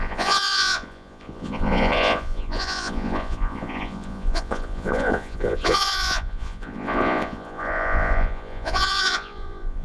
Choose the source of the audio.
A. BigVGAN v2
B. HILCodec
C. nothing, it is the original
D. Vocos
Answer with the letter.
D